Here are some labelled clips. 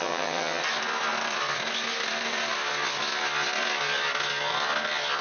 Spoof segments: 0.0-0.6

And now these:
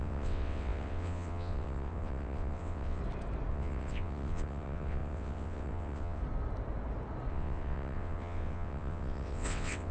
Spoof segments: 0.0-3.0; 3.5-6.2; 7.3-9.9

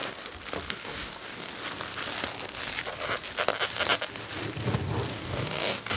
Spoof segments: 0.7-1.5; 5.1-6.0

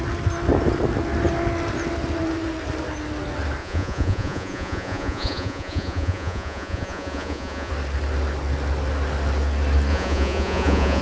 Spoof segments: 3.6-7.7; 9.9-11.0